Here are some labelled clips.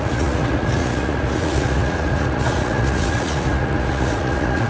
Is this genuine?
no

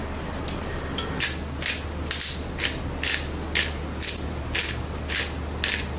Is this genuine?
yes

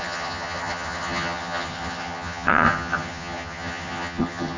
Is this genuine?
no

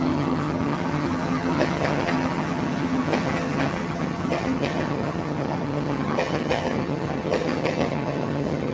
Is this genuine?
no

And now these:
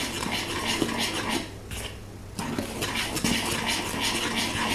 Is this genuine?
yes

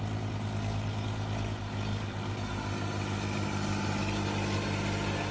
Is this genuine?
yes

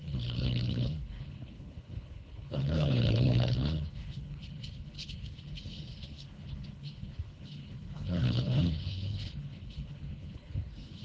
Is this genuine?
no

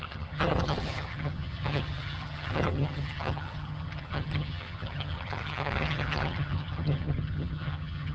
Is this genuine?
no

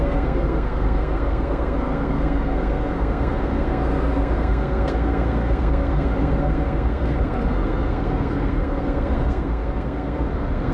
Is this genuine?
no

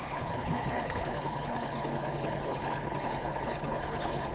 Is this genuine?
no